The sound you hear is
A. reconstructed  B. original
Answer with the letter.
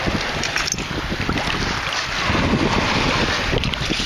B